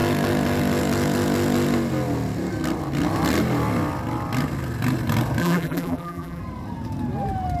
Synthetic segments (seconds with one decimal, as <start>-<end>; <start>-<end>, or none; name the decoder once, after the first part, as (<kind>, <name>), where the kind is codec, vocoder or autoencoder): 5.4-6.4 (vocoder, BigVGAN v2)